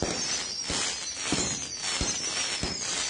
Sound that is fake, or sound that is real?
real